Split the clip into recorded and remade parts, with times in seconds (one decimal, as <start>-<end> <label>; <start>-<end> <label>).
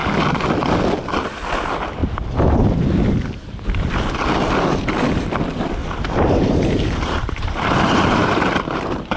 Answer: 0.0-5.8 recorded; 5.8-8.3 remade; 8.3-9.2 recorded